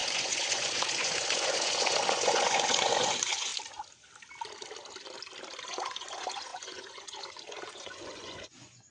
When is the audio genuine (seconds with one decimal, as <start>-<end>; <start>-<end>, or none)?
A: 3.5-5.6